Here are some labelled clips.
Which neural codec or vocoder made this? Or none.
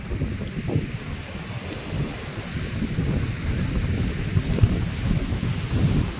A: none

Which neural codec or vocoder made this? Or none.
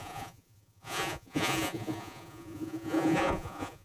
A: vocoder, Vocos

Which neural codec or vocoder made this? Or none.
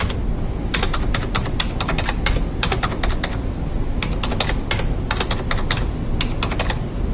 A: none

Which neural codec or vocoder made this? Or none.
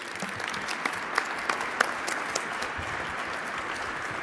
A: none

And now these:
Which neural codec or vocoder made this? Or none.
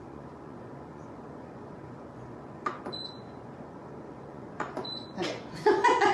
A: vocoder, Vocos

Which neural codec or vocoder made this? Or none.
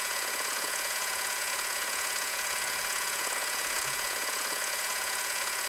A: vocoder, Vocos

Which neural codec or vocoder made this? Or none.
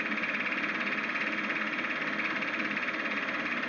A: none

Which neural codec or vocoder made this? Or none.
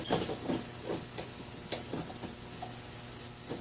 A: none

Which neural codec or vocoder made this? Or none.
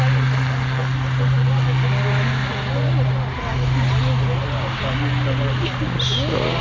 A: none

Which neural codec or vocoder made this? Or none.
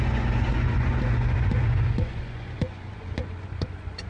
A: vocoder, Vocos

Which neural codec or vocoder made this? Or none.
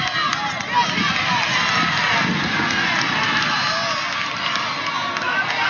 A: none